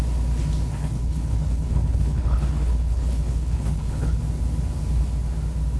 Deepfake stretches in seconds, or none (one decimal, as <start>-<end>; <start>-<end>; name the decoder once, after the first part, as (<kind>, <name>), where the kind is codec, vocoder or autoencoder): 0.7-4.2 (codec, HILCodec)